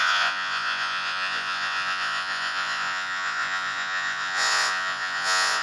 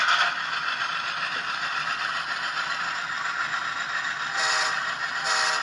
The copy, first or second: first